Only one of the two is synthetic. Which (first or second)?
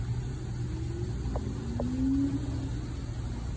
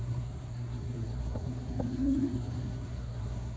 second